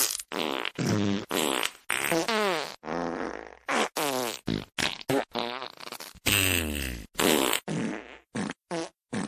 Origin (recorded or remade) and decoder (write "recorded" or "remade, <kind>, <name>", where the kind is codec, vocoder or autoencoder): recorded